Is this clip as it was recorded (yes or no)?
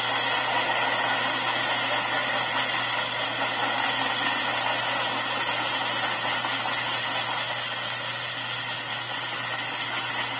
yes